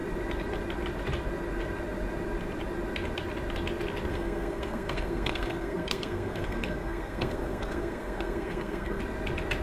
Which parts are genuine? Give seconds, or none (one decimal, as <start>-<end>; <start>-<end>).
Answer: 0.0-4.1; 9.0-9.6